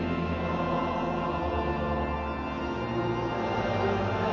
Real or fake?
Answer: real